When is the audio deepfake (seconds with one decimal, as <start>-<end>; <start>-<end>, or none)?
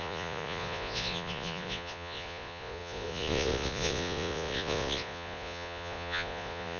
0.0-6.8